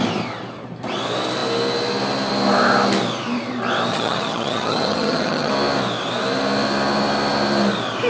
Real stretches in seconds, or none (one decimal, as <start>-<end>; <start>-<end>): 0.0-3.9; 5.5-8.1